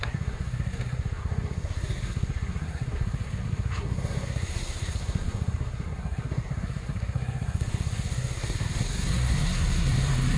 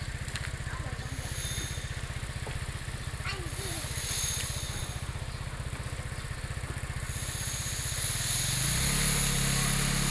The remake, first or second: first